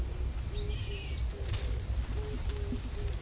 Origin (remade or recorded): recorded